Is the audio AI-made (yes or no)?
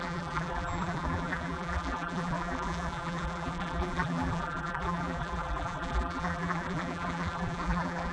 yes